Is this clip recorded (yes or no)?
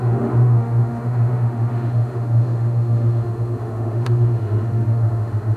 no